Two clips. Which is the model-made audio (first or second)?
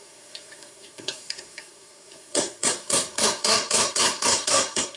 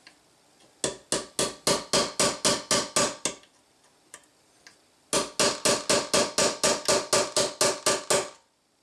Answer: first